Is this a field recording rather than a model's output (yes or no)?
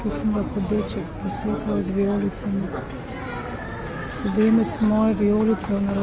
yes